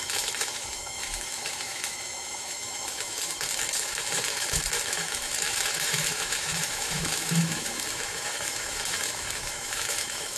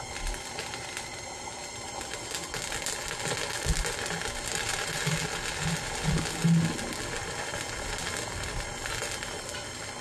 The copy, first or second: first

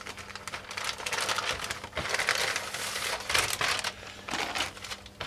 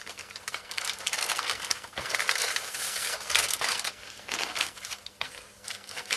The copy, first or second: second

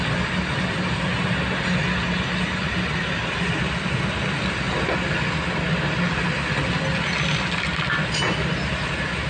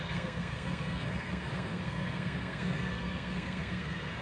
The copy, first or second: second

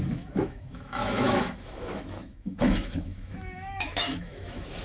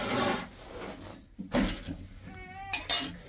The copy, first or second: first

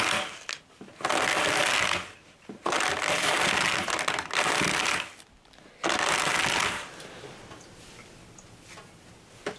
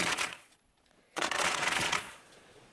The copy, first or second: second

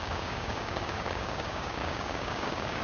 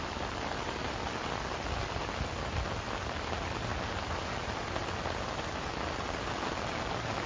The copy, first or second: first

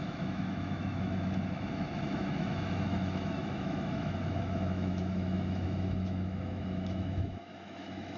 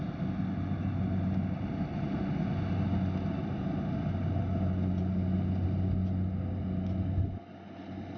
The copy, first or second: first